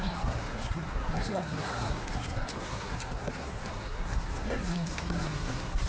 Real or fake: fake